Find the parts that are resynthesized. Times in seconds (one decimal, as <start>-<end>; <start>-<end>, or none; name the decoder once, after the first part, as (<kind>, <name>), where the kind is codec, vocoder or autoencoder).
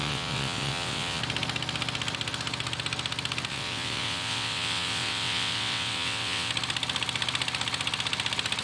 0.0-1.2 (vocoder, WaveNeXt); 3.5-6.5